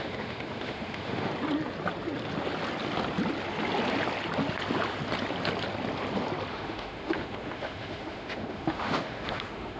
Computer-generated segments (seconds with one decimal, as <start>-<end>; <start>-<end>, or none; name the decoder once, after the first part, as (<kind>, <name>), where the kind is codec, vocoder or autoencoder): 0.0-1.3 (autoencoder, DAC-VAE); 6.5-9.8